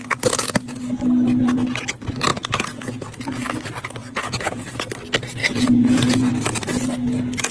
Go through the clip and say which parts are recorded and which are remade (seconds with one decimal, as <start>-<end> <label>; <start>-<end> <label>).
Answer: 0.0-2.3 recorded; 2.3-3.1 remade; 3.1-4.0 recorded; 4.0-4.7 remade; 4.7-5.4 recorded; 5.4-6.3 remade; 6.3-7.5 recorded